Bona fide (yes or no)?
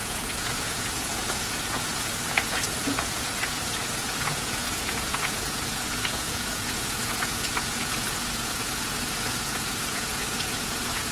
no